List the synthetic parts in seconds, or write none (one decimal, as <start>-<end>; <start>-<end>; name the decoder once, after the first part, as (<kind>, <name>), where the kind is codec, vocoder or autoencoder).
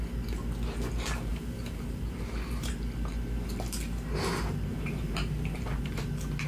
1.3-2.7 (vocoder, BigVGAN v2); 4.7-5.9